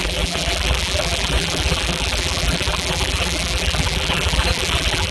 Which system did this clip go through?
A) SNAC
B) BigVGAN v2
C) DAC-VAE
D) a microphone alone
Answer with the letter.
B